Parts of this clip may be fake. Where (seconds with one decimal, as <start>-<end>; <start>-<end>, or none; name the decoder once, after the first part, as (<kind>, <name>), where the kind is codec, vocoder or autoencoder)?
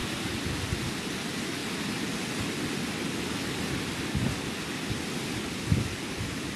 none